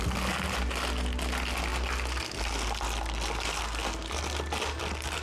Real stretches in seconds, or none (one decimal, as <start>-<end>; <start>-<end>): 0.0-5.2